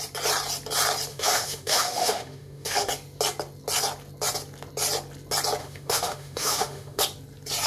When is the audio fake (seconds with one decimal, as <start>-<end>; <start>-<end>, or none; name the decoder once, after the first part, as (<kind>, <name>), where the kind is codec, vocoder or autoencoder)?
1.1-2.9 (autoencoder, DAC-VAE); 5.6-7.0